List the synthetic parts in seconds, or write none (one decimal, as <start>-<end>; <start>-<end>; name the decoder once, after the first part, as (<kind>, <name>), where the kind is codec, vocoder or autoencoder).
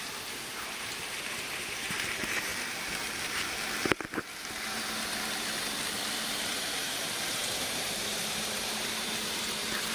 0.0-2.5 (vocoder, BigVGAN v2); 6.4-9.9